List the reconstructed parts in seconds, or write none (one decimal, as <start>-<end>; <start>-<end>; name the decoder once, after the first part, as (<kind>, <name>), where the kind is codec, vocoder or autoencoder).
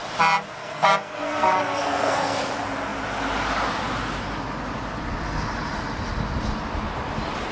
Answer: 0.6-2.5 (codec, SNAC)